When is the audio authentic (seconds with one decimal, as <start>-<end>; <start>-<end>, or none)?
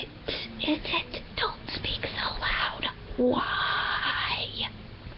0.0-5.2